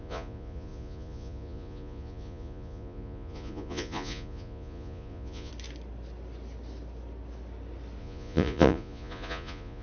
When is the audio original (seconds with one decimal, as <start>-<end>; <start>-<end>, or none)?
5.5-8.0